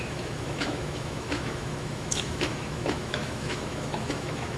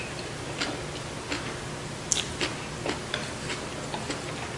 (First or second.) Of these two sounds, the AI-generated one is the first